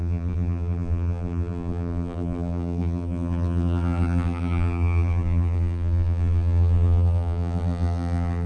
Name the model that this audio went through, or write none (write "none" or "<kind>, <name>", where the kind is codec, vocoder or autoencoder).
vocoder, BigVGAN v2